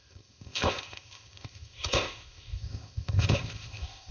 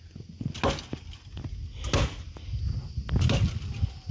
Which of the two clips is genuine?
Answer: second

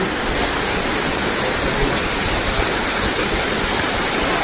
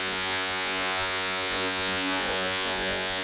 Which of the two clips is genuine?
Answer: first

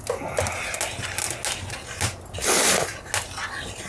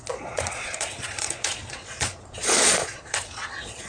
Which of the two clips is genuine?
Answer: first